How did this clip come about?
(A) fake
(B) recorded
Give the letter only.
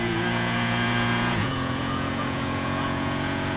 A